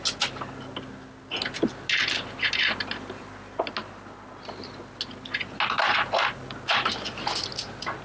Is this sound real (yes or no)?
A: yes